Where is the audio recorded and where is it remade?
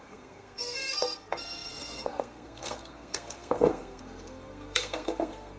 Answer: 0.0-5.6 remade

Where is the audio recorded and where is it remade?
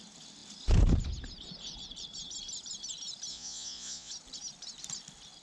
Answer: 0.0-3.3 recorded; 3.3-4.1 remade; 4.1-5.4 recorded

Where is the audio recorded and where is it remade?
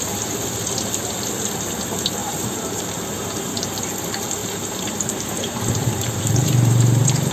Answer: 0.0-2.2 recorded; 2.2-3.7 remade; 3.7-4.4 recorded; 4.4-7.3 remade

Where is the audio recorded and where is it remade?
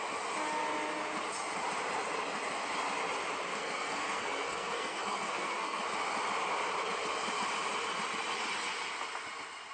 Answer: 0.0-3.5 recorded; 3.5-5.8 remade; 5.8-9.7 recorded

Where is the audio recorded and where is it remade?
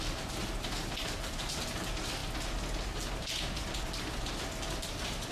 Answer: 0.0-0.4 remade; 0.4-1.0 recorded; 1.0-2.2 remade; 2.2-4.0 recorded; 4.0-5.3 remade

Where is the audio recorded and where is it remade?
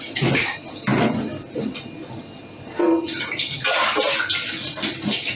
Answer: 0.0-5.4 recorded